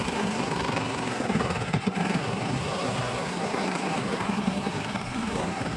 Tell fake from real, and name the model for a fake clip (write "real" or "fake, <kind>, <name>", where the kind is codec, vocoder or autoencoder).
fake, codec, SNAC